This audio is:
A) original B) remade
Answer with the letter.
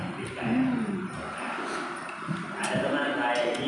B